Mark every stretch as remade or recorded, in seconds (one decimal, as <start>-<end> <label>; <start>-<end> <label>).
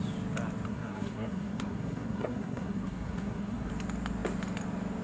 0.0-0.7 recorded; 0.7-3.7 remade; 3.7-5.0 recorded